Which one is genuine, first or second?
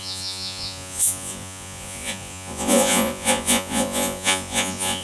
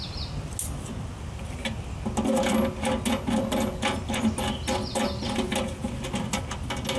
second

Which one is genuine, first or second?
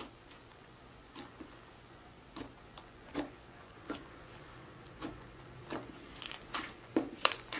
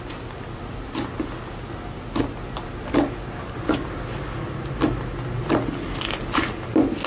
second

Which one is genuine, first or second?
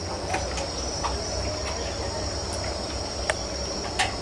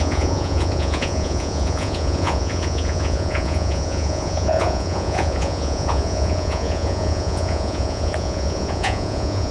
first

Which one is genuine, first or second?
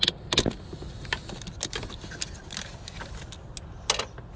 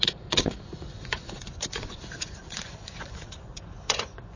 first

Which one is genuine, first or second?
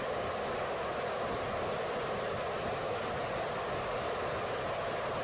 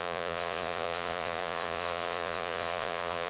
first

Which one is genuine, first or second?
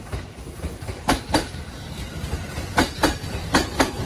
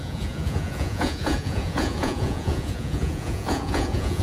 first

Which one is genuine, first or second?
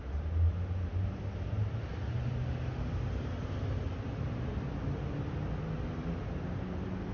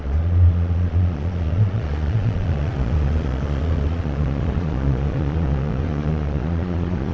first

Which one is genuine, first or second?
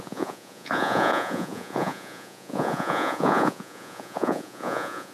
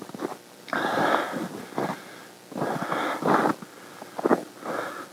second